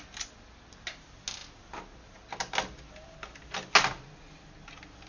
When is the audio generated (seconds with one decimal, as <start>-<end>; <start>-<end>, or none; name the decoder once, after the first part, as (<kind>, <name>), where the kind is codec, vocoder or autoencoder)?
none

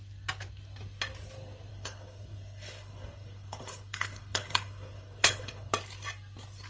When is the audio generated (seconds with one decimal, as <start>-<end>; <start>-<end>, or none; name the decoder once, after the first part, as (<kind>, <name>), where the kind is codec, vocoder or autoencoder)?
1.7-5.7 (codec, HILCodec)

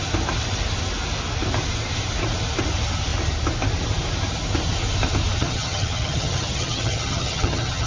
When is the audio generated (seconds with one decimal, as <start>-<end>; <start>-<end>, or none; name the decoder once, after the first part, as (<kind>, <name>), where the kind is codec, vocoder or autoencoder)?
5.4-7.9 (vocoder, HiFi-GAN)

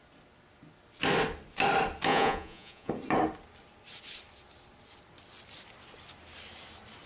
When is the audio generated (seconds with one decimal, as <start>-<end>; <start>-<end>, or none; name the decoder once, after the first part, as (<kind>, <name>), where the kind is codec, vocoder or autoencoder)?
2.1-2.9 (vocoder, Vocos)